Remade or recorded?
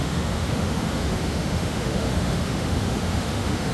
remade